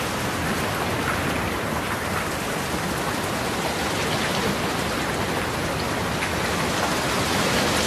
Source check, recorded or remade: recorded